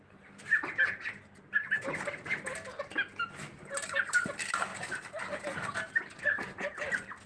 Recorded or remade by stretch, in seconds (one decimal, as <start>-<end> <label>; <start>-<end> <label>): 0.0-7.3 recorded